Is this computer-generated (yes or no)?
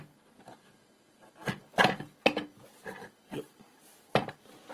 no